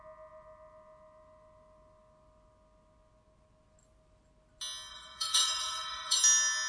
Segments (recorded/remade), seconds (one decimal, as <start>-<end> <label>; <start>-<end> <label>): 0.0-4.9 recorded; 4.9-6.2 remade; 6.2-6.7 recorded